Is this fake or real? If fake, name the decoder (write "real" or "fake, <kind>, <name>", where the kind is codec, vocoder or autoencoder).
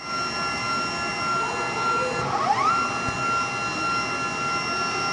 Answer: real